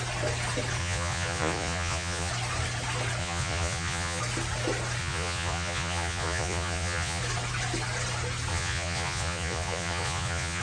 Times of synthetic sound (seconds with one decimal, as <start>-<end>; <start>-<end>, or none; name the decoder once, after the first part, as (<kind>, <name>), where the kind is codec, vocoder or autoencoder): 0.8-2.3 (vocoder, Vocos); 3.2-4.2; 5.0-7.2; 8.5-10.6